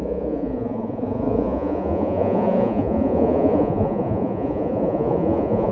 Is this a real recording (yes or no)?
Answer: no